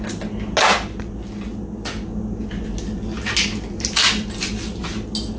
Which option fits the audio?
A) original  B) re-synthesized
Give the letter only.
A